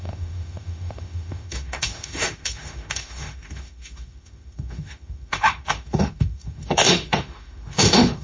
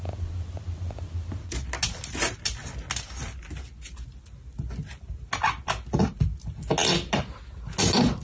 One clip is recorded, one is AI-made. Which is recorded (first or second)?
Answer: second